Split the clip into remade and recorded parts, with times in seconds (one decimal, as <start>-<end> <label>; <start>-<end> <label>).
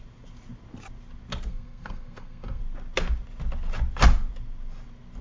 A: 0.0-1.5 recorded; 1.5-2.6 remade; 2.6-5.2 recorded